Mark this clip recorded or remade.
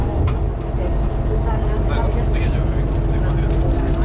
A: recorded